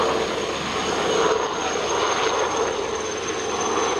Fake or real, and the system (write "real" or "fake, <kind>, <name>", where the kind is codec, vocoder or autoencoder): real